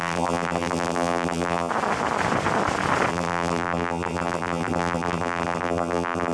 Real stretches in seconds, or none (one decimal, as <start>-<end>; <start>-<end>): 1.7-3.1